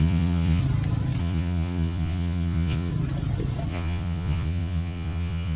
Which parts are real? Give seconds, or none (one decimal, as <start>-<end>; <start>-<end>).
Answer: 0.6-1.2; 2.9-3.7